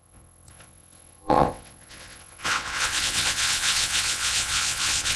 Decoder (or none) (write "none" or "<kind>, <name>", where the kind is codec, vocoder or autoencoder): vocoder, WaveNeXt